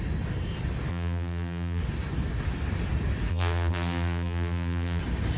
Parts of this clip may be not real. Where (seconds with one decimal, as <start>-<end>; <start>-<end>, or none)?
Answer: 0.9-1.8; 3.3-5.0